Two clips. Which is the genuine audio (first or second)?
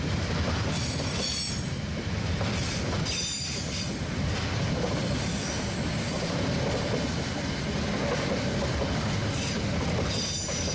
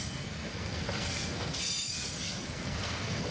first